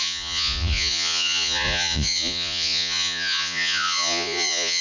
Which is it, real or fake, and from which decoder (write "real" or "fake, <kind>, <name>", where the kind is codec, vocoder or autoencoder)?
fake, vocoder, Vocos